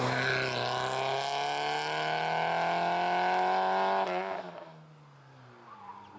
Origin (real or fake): real